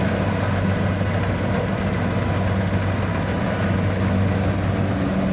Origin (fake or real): real